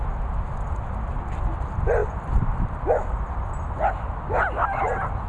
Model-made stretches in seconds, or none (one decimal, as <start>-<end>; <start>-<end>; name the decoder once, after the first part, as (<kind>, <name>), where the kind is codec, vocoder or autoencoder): none